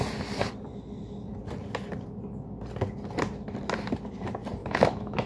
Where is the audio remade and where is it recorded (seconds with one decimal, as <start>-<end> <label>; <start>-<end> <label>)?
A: 0.0-4.6 recorded; 4.6-5.3 remade